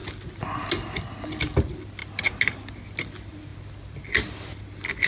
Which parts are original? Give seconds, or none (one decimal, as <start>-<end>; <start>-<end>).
0.0-5.1